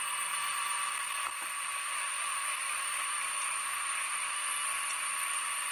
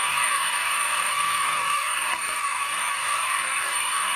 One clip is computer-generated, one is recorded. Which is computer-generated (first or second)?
second